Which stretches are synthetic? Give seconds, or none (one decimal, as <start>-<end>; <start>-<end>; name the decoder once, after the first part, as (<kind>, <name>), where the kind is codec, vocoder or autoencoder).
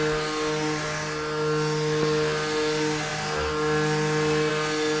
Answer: none